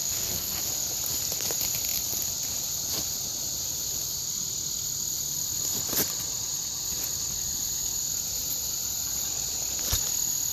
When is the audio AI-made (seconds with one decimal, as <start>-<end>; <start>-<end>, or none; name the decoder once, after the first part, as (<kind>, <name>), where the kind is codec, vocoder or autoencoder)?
0.0-0.6 (codec, SNAC)